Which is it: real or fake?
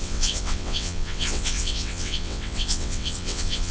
fake